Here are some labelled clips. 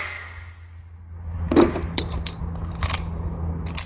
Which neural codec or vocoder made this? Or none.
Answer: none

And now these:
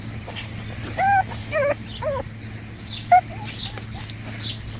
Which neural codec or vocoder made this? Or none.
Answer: none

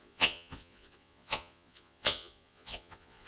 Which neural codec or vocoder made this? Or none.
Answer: vocoder, Vocos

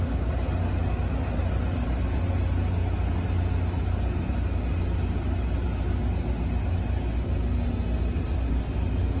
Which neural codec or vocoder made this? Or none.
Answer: none